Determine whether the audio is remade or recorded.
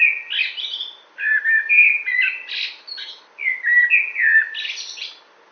recorded